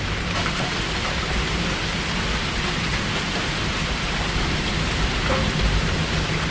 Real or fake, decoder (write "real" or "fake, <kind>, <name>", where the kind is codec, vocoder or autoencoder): fake, vocoder, BigVGAN v2